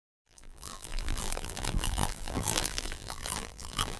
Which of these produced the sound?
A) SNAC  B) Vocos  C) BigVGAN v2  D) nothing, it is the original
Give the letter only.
C